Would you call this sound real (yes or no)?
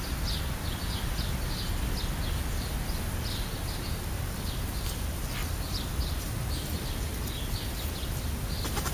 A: yes